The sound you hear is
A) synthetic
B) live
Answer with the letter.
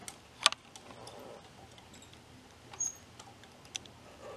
B